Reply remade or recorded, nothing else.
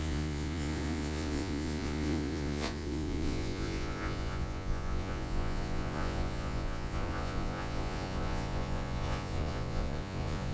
remade